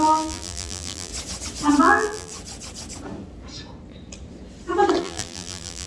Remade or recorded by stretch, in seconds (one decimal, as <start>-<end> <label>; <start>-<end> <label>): 0.0-1.1 remade; 1.1-1.8 recorded; 1.8-2.3 remade; 2.3-5.0 recorded; 5.0-5.9 remade